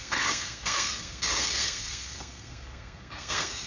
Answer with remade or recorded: remade